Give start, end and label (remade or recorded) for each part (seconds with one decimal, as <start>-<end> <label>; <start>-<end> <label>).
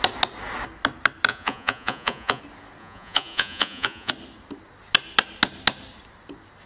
0.0-1.3 recorded; 1.3-2.4 remade; 2.4-2.8 recorded; 2.8-4.1 remade; 4.1-6.7 recorded